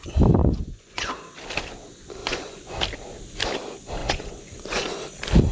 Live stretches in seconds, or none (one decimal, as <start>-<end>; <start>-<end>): 0.0-0.4; 1.1-2.2; 2.8-4.0; 5.0-5.5